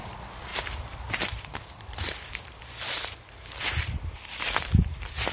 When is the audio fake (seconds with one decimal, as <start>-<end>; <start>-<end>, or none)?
0.0-5.3